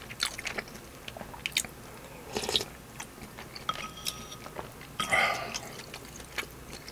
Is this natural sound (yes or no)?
yes